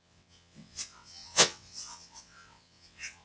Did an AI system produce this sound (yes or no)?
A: yes